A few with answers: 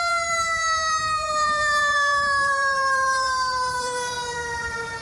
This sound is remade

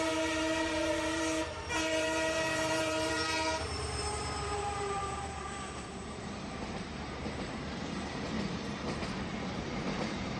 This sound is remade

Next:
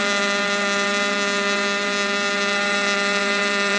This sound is remade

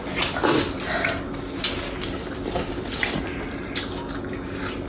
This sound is recorded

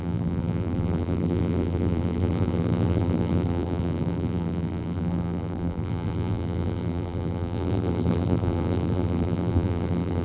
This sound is remade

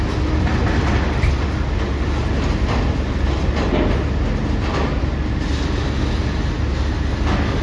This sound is recorded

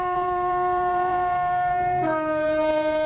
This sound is remade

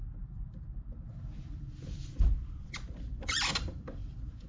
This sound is remade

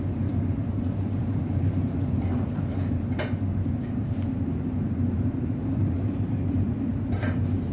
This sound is remade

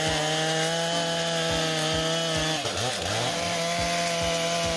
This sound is recorded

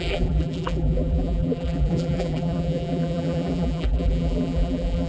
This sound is remade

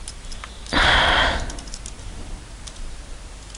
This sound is remade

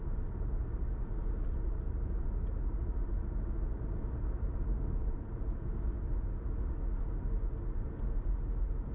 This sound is recorded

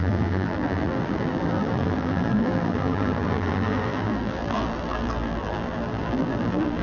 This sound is remade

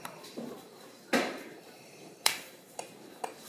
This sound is remade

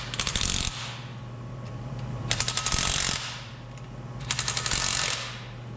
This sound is remade